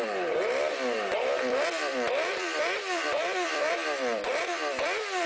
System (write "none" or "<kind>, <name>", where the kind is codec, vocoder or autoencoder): vocoder, BigVGAN v2